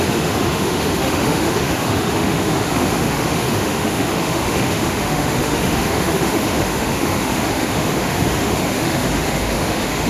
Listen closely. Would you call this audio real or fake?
fake